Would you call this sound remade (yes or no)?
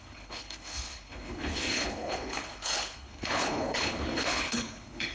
yes